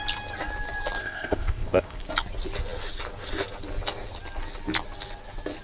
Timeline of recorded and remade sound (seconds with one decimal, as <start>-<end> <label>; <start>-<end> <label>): 0.0-1.0 recorded; 1.0-2.0 remade; 2.0-5.6 recorded